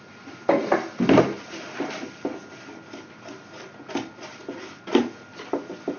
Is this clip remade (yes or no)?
no